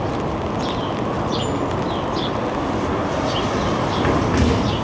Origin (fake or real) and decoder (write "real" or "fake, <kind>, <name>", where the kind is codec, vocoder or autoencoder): real